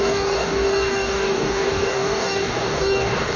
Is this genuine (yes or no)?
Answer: no